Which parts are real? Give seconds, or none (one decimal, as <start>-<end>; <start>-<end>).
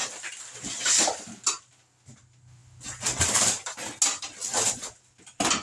0.0-5.6